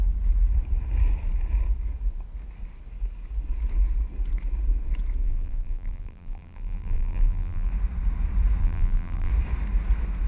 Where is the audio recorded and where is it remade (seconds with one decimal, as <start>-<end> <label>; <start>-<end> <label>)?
0.0-5.2 recorded; 5.2-7.7 remade; 7.7-8.6 recorded; 8.6-9.3 remade; 9.3-10.3 recorded

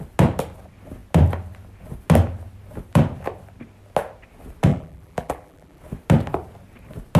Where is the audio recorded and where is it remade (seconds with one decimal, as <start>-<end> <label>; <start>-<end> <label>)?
0.0-4.7 recorded; 4.7-5.8 remade; 5.8-7.2 recorded

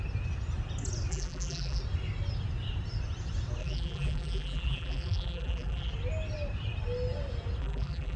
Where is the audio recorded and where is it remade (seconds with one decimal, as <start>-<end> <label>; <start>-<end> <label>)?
0.0-1.1 recorded; 1.1-1.8 remade; 1.8-3.6 recorded; 3.6-5.9 remade; 5.9-7.6 recorded; 7.6-8.2 remade

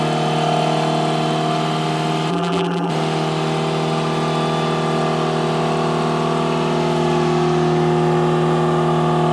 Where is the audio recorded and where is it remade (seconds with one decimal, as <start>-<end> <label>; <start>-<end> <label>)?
0.0-2.3 recorded; 2.3-2.9 remade; 2.9-9.3 recorded